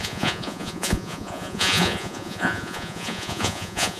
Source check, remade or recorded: remade